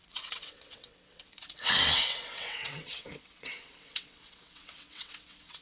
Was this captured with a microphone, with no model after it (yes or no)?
no